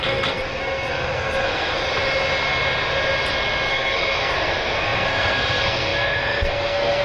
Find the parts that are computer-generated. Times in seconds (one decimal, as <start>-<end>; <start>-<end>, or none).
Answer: 0.0-1.8; 3.7-7.0